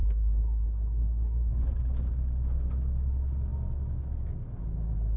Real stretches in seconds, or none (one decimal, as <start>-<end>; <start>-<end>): 1.5-5.2